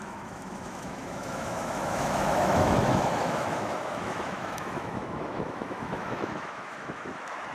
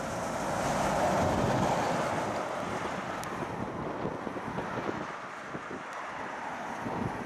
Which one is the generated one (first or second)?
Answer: first